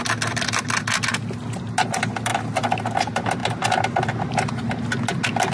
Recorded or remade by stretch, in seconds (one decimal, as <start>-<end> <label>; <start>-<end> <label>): 0.0-5.5 recorded